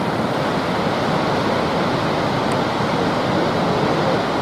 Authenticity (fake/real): real